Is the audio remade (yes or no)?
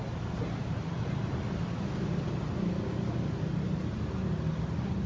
no